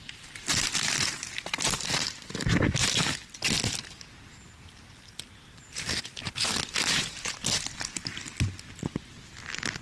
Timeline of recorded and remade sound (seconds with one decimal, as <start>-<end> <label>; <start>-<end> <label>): 0.0-9.8 recorded